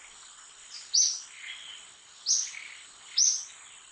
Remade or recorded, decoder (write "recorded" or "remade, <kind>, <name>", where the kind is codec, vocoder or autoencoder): recorded